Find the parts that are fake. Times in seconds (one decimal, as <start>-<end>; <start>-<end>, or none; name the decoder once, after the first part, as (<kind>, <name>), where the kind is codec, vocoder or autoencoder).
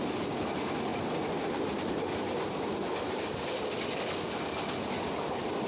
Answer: none